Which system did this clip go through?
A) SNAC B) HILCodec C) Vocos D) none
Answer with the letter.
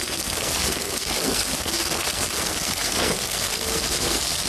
A